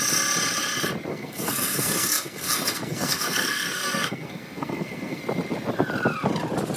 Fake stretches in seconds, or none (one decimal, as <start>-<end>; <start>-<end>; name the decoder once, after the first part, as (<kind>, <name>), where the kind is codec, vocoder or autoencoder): 1.1-5.2 (codec, SNAC)